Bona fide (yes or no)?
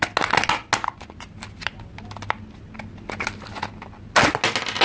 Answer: yes